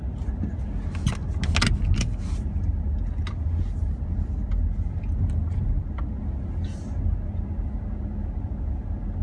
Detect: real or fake real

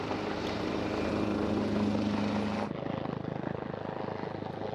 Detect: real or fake real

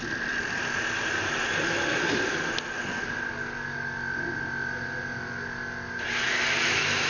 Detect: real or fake real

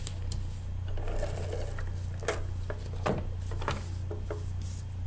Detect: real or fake real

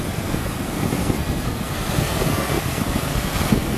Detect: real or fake fake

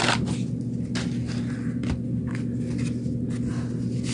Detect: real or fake real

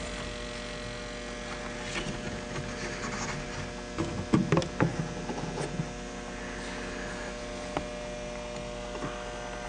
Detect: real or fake real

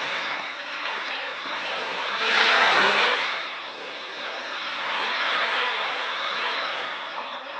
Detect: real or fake fake